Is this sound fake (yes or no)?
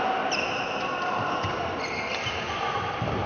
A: no